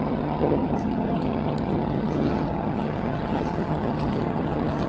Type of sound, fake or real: fake